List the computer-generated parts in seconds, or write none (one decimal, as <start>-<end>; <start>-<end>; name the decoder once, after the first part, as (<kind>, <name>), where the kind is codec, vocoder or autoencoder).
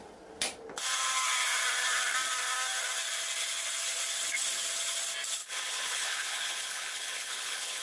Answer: 5.4-7.8 (codec, HILCodec)